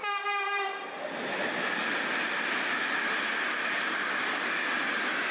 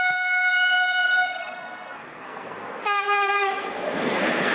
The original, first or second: first